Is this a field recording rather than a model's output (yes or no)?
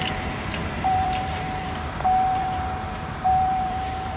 no